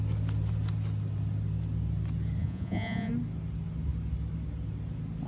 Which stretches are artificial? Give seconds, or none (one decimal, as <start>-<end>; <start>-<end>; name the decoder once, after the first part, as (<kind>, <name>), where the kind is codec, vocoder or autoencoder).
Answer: 2.4-3.1 (vocoder, Vocos)